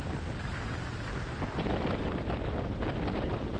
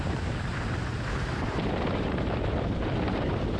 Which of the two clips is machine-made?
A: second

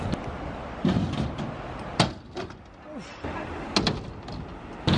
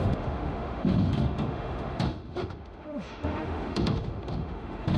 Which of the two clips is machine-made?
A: second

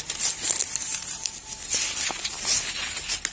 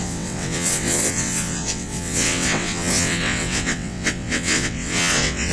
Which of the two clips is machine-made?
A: second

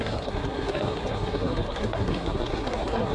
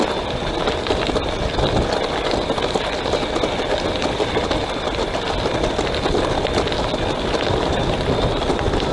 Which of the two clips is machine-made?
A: first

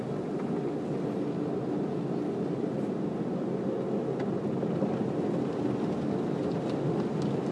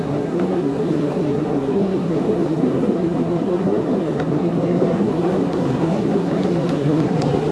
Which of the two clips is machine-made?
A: second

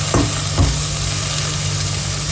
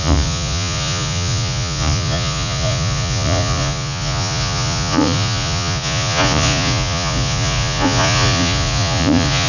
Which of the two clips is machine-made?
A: second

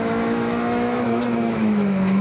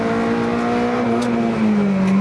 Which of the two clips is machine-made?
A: first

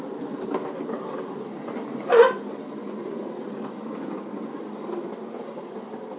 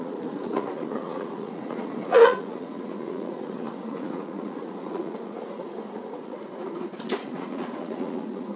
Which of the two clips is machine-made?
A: second